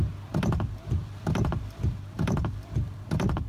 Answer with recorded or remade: remade